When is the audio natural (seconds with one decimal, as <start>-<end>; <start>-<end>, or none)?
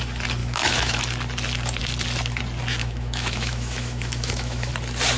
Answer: 0.0-0.4; 1.0-2.8; 4.7-5.2